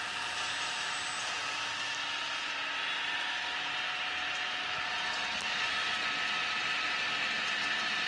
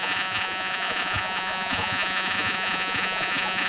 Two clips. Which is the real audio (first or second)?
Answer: first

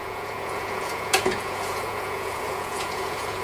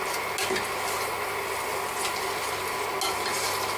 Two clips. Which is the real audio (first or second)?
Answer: second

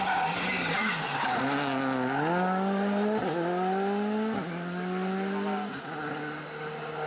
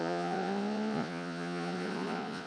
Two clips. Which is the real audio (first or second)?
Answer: first